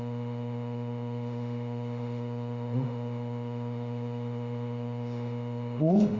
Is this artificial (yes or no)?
yes